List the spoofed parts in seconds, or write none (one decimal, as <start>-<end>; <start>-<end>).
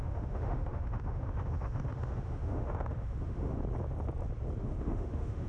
0.0-3.6; 4.6-5.5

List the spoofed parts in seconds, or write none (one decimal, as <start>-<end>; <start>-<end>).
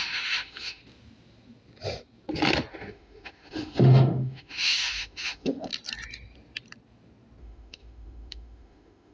0.0-0.8; 2.7-5.7; 7.4-9.1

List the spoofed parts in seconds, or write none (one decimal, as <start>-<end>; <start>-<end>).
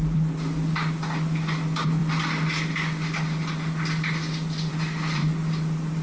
none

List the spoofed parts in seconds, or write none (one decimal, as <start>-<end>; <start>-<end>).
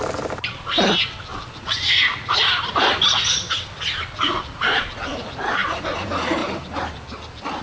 none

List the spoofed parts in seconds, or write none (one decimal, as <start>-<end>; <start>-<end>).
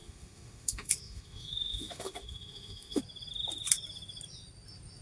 0.0-3.0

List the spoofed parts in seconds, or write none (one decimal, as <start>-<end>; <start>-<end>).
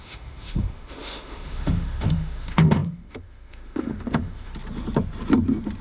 0.0-4.5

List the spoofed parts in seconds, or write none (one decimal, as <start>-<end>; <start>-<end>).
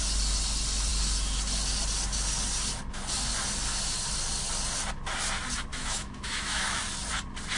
5.7-6.8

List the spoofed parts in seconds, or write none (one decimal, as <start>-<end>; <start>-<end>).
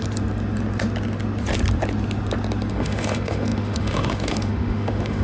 2.7-5.2